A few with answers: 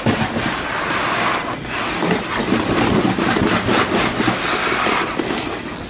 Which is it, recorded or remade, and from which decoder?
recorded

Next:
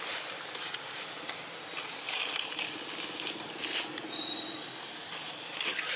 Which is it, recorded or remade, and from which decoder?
recorded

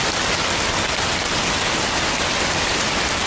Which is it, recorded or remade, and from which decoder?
recorded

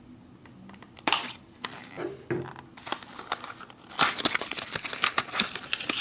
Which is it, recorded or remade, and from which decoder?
recorded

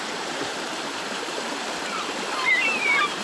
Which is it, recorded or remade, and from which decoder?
remade, vocoder, BigVGAN v2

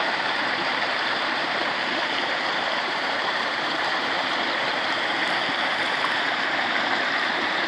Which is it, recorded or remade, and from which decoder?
remade, vocoder, BigVGAN v2